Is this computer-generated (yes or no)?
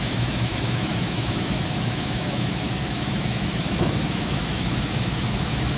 yes